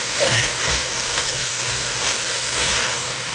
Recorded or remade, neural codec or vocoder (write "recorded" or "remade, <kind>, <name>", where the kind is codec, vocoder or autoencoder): remade, codec, DAC